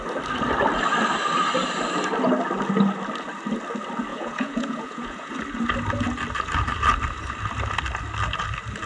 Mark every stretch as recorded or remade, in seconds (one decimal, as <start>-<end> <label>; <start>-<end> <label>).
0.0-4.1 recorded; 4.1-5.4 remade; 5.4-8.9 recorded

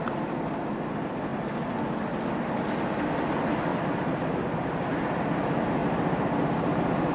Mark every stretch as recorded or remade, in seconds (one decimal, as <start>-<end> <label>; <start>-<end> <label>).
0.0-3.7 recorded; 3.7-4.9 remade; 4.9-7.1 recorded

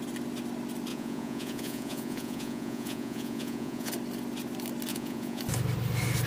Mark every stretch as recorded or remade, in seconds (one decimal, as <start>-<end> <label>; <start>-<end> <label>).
0.0-0.9 recorded; 0.9-3.9 remade; 3.9-4.9 recorded; 4.9-5.4 remade; 5.4-6.3 recorded

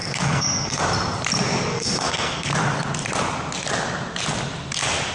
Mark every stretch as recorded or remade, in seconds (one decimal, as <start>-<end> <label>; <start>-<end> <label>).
0.0-0.8 remade; 0.8-1.7 recorded; 1.7-2.5 remade; 2.5-5.1 recorded

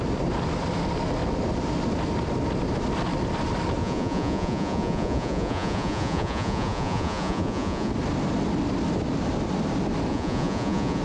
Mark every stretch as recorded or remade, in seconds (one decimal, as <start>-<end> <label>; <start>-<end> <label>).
0.0-3.8 recorded; 3.8-7.9 remade; 7.9-10.1 recorded; 10.1-11.0 remade

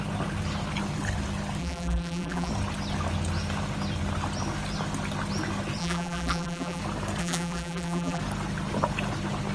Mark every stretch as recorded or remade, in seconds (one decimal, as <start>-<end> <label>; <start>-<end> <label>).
0.0-1.6 recorded; 1.6-2.5 remade; 2.5-5.8 recorded; 5.8-6.8 remade; 6.8-7.2 recorded; 7.2-8.2 remade; 8.2-9.5 recorded

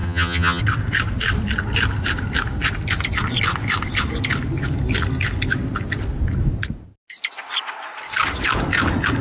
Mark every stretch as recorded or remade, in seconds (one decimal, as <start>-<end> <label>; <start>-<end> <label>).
0.0-0.6 remade; 0.6-9.2 recorded

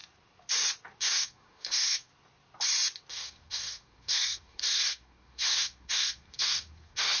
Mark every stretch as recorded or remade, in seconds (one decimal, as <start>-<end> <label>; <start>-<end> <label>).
0.0-1.0 recorded; 1.0-2.1 remade; 2.1-3.1 recorded; 3.1-7.2 remade